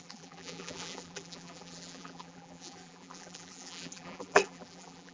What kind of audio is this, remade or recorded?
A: remade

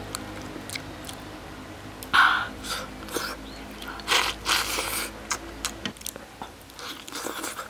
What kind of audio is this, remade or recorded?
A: recorded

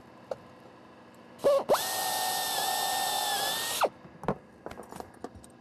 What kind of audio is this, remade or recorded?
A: recorded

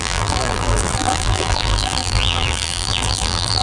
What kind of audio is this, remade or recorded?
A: remade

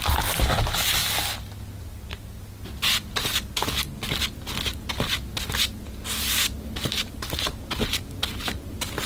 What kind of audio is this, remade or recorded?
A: recorded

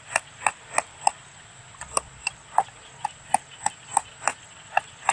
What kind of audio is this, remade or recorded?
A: recorded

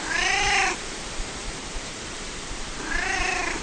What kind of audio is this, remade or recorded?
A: remade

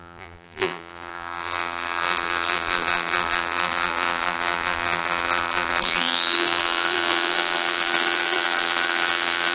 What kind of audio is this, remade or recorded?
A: remade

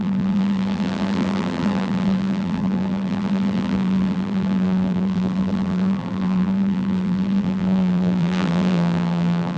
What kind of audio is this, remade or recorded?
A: remade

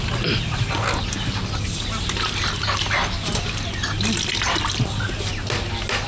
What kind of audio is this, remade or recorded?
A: recorded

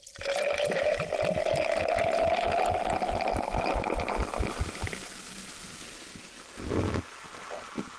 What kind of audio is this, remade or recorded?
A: recorded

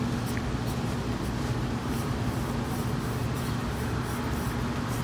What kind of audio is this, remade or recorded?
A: recorded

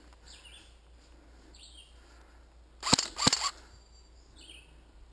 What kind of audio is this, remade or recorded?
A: recorded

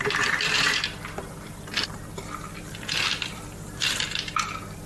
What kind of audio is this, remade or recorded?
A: remade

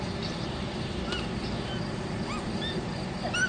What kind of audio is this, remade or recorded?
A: recorded